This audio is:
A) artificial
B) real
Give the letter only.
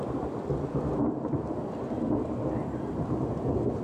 B